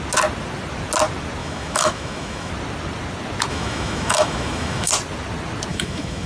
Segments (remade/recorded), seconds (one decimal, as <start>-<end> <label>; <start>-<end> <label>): 0.0-1.4 recorded; 1.4-2.5 remade; 2.5-3.5 recorded; 3.5-4.9 remade; 4.9-5.7 recorded; 5.7-6.3 remade